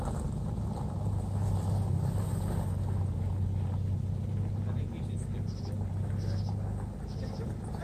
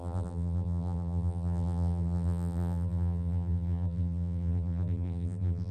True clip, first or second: first